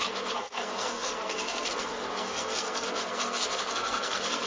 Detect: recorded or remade remade